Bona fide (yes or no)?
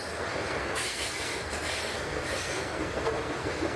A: no